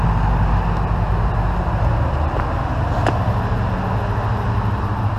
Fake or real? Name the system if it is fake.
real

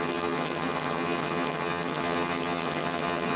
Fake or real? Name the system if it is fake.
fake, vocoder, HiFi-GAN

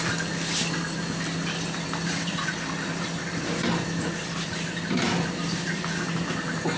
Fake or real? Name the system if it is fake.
real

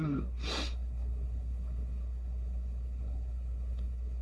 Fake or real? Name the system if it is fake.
fake, codec, SNAC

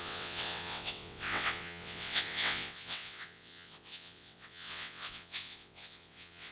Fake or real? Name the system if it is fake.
fake, vocoder, WaveNeXt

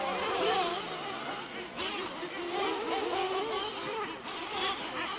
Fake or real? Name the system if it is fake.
real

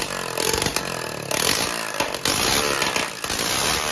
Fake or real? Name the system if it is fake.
real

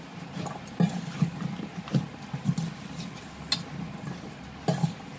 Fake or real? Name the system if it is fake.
real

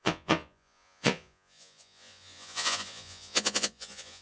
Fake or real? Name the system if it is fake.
fake, vocoder, Vocos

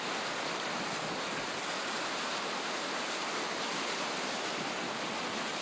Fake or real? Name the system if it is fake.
real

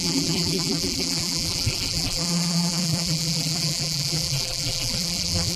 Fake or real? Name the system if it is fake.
fake, vocoder, BigVGAN v2